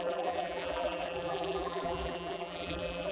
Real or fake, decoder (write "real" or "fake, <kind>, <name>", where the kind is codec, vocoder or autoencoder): fake, vocoder, BigVGAN v2